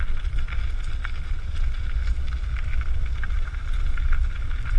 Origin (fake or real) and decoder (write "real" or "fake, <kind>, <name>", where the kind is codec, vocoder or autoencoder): real